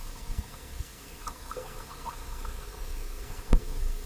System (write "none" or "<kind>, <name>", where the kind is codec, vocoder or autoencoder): codec, SNAC